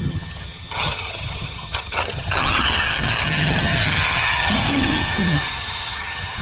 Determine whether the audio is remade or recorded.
remade